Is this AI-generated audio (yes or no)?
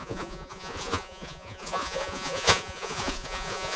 yes